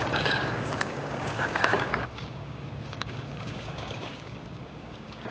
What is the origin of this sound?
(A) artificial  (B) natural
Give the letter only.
A